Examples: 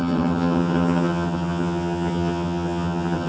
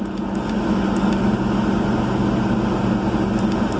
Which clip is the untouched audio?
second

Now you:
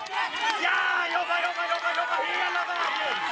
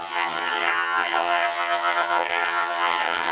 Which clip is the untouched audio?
first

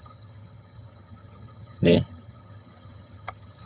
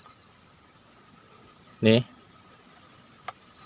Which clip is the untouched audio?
second